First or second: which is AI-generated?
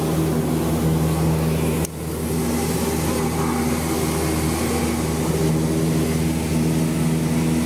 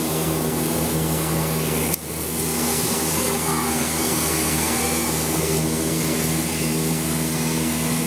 second